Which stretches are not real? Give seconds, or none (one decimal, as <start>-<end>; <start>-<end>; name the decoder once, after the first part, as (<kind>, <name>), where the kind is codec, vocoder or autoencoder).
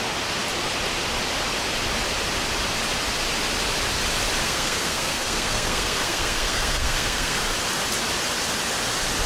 4.4-7.4 (codec, SNAC)